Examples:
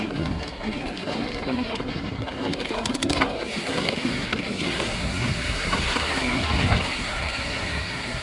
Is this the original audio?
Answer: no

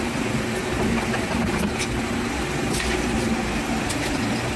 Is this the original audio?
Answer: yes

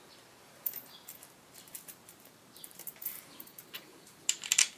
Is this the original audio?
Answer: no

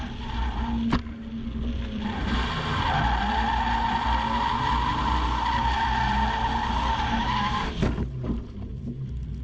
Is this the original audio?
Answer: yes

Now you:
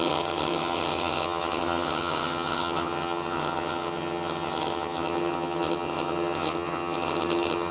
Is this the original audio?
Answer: no